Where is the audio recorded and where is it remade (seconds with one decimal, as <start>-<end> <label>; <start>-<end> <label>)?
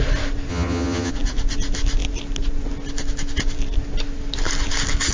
0.0-0.5 recorded; 0.5-1.1 remade; 1.1-5.1 recorded